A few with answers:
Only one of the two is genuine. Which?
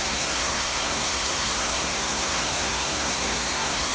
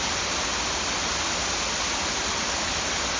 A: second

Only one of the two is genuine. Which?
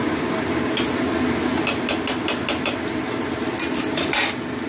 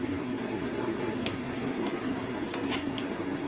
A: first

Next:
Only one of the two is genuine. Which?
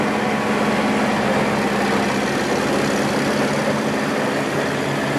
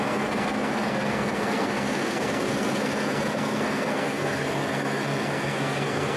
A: first